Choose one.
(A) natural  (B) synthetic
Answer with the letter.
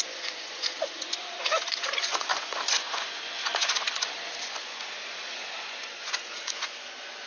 B